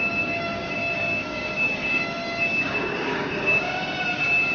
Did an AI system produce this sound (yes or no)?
yes